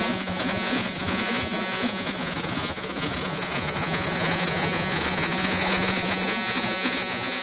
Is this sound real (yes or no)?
no